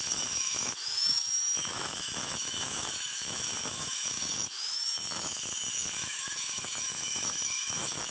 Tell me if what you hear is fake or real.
fake